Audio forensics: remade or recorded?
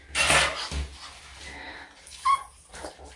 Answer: recorded